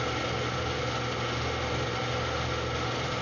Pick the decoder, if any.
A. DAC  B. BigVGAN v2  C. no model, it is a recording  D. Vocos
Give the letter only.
C